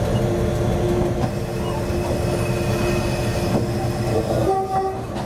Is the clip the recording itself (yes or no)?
yes